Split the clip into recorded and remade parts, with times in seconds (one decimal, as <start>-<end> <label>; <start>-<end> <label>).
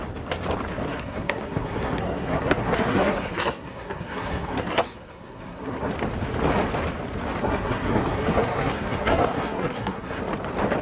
0.0-0.9 recorded; 0.9-5.9 remade; 5.9-7.4 recorded; 7.4-10.2 remade; 10.2-10.8 recorded